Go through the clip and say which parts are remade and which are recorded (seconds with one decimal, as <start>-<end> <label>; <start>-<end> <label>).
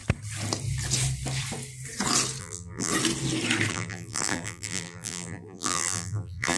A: 0.0-2.4 recorded; 2.4-2.9 remade; 2.9-3.7 recorded; 3.7-6.6 remade